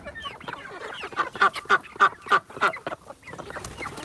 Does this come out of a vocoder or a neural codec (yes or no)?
no